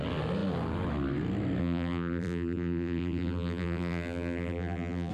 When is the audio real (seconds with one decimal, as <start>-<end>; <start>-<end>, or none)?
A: 0.0-1.6